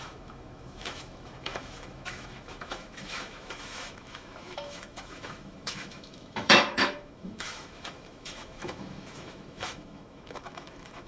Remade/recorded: remade